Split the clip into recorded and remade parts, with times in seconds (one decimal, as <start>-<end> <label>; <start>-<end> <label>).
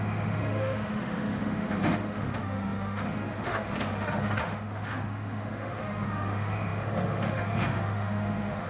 0.0-8.7 remade